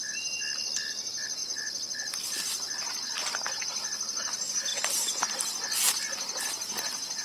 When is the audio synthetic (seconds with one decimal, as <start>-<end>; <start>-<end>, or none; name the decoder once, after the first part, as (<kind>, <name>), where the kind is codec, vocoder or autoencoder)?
none